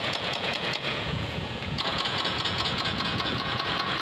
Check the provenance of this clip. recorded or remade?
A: remade